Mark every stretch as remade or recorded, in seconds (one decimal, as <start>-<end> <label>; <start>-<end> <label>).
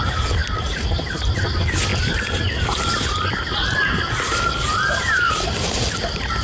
0.0-6.4 recorded